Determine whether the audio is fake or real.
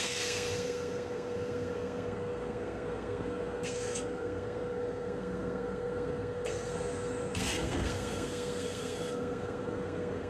fake